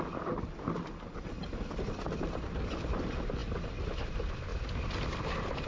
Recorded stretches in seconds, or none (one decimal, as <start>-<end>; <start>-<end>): 0.0-5.7